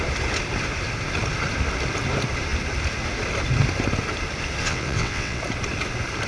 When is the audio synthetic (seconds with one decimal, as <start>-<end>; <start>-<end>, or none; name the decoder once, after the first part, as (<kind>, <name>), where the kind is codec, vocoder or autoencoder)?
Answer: 4.6-5.4 (vocoder, WaveNeXt)